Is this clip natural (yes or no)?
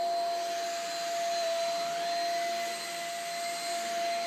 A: yes